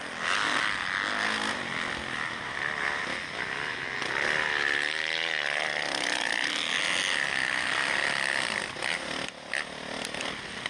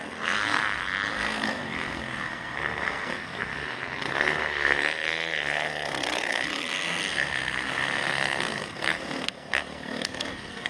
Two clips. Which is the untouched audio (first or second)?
first